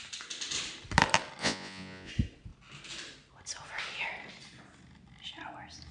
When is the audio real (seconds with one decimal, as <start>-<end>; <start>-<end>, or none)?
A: 0.0-1.4; 2.1-5.9